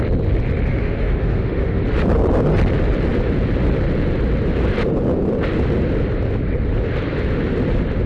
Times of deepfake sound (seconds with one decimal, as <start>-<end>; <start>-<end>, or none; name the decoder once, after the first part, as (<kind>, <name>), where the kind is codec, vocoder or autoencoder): 0.7-1.8 (autoencoder, DAC-VAE)